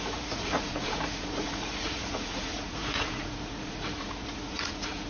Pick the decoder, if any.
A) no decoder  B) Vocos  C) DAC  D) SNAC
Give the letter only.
B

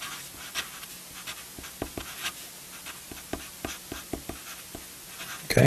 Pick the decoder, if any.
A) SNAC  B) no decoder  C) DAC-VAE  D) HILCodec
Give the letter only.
B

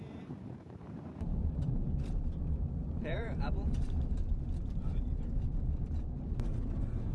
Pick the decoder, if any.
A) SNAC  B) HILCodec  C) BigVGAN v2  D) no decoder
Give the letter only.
C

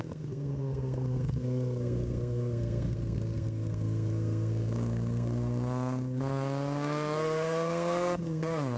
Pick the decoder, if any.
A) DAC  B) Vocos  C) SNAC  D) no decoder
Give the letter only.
C